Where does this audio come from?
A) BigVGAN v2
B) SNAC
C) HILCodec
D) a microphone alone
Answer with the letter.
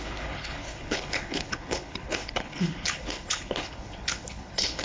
C